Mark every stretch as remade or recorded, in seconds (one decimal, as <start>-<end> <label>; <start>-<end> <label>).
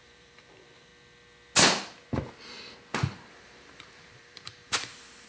0.0-0.9 remade; 0.9-3.3 recorded; 3.3-5.3 remade